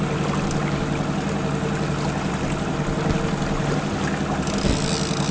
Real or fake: real